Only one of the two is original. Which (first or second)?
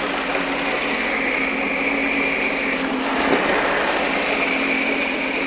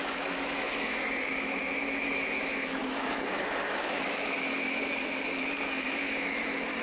first